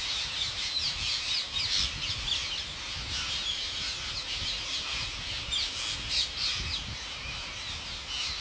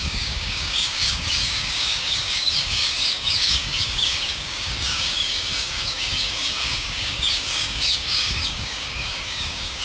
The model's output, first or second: second